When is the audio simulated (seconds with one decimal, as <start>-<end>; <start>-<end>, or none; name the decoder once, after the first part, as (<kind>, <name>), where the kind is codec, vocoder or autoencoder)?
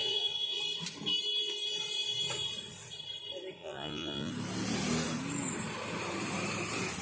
0.0-0.6 (vocoder, Vocos); 3.6-4.3